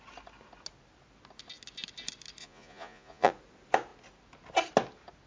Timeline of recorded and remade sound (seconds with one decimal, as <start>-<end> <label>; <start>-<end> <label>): 0.0-2.4 recorded; 2.4-3.3 remade; 3.3-5.3 recorded